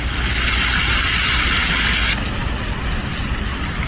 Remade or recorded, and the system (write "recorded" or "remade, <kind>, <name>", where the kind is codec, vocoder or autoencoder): recorded